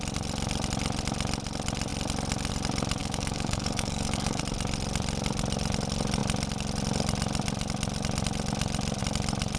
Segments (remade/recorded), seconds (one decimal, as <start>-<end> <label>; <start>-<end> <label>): 0.0-3.0 recorded; 3.0-4.4 remade; 4.4-9.6 recorded